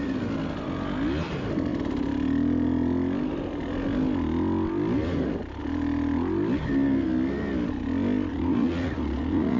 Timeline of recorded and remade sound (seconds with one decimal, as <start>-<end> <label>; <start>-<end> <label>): 0.0-8.3 recorded; 8.3-9.6 remade